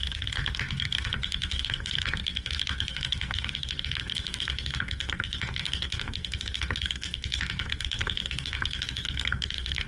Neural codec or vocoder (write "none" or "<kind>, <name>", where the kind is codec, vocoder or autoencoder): codec, SNAC